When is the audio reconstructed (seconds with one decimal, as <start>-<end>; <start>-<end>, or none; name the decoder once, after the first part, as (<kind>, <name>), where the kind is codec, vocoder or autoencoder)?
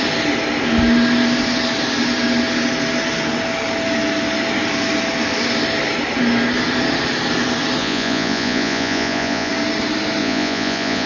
7.8-9.5 (vocoder, Vocos); 10.2-11.1